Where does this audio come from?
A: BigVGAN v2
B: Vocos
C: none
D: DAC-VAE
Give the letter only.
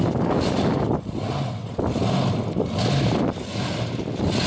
C